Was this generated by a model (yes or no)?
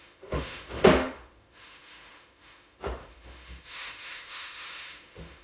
yes